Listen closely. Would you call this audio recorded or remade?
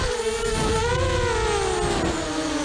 recorded